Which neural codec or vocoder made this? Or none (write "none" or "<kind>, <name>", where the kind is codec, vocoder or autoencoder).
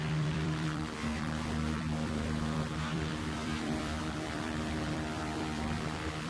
vocoder, BigVGAN v2